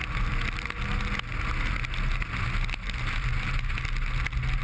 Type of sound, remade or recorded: recorded